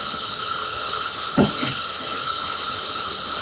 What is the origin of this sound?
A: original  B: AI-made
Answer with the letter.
B